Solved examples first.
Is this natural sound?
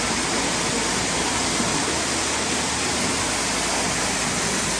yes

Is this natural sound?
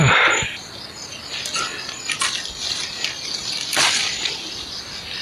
yes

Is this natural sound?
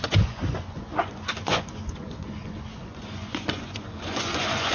no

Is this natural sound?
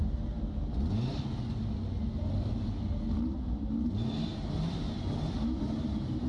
yes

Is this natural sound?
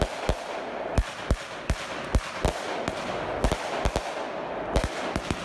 yes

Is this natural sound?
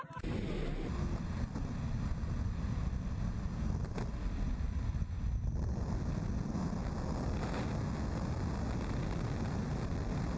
yes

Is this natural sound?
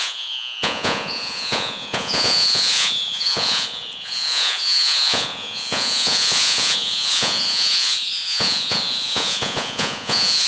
no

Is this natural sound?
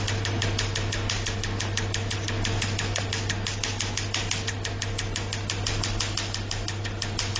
yes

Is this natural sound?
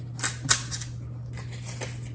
yes